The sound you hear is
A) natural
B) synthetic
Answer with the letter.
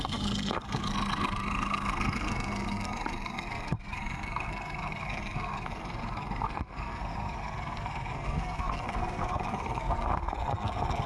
B